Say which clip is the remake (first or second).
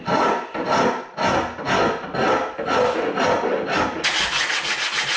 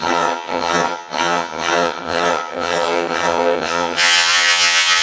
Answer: second